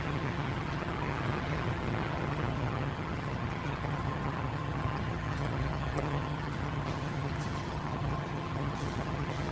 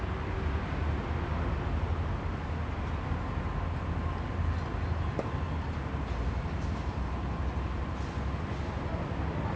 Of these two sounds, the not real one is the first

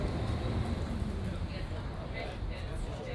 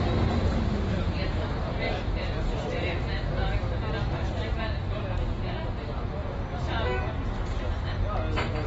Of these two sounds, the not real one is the first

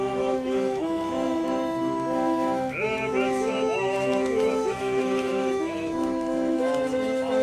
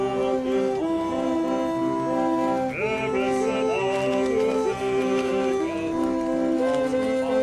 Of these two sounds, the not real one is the first